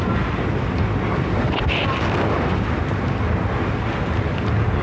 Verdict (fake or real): fake